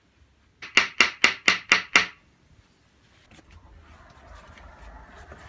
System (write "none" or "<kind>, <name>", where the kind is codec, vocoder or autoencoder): none